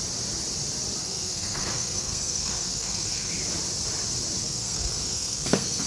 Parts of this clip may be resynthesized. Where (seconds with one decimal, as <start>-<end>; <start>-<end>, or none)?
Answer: 1.0-3.3; 4.4-5.9